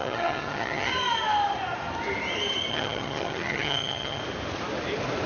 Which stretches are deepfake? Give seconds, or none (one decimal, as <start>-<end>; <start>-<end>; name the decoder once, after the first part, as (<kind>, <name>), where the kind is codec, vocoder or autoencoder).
0.0-0.9 (vocoder, HiFi-GAN); 2.7-4.2

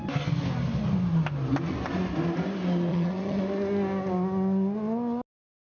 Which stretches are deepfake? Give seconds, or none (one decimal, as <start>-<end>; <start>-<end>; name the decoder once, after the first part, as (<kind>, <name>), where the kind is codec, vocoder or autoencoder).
2.9-3.4 (vocoder, HiFi-GAN)